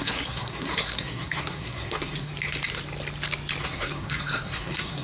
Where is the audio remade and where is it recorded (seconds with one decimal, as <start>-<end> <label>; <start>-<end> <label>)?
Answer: 0.0-2.3 remade; 2.3-3.6 recorded; 3.6-5.0 remade